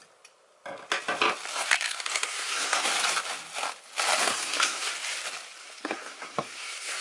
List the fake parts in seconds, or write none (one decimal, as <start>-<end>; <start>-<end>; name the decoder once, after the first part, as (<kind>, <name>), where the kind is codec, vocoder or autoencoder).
1.5-2.9 (codec, SNAC); 4.2-4.9; 5.6-7.0